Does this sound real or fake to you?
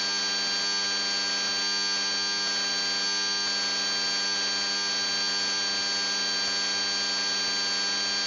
real